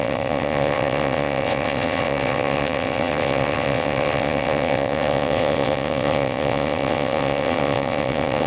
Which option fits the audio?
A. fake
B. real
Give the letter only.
A